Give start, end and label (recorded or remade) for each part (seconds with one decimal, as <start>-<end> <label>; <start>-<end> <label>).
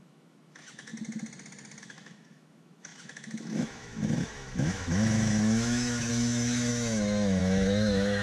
0.0-0.9 remade; 0.9-1.8 recorded; 1.8-8.2 remade